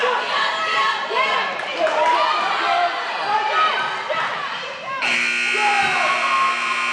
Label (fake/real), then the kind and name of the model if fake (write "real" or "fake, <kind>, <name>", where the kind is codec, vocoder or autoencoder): real